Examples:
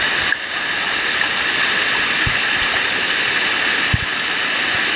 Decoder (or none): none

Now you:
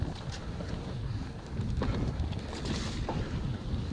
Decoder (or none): none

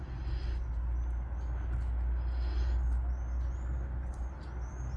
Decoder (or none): none